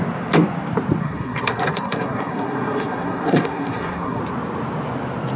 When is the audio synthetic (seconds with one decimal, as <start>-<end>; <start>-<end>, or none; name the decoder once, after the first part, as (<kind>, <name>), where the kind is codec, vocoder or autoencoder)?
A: 1.0-4.2 (codec, SNAC)